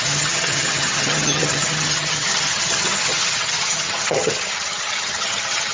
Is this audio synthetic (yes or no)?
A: yes